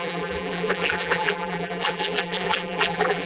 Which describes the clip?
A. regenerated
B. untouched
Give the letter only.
A